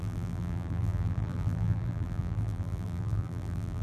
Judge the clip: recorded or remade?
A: remade